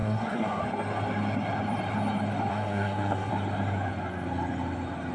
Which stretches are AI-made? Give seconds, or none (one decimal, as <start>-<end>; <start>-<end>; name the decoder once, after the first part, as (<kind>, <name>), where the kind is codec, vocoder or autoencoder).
0.0-0.6 (codec, SNAC); 2.5-3.3